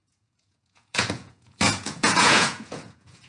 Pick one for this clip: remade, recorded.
remade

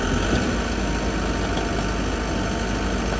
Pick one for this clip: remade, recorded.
recorded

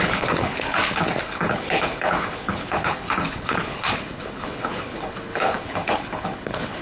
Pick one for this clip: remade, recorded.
remade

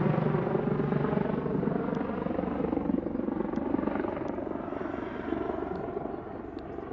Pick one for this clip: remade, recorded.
remade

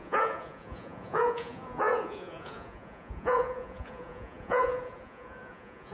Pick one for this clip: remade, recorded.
remade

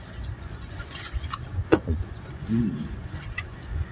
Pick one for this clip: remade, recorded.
remade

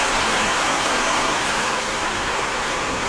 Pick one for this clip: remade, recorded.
remade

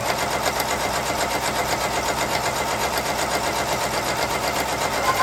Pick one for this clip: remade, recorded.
recorded